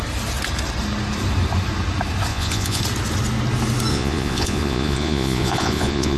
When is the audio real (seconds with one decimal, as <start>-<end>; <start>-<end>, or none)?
0.0-2.3; 2.8-3.9